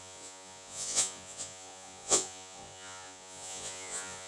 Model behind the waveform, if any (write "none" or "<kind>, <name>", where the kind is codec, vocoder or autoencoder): vocoder, Vocos